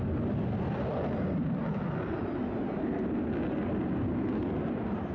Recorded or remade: recorded